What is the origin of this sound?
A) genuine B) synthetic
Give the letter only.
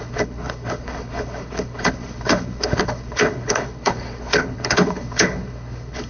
B